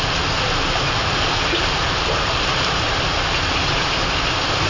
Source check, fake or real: real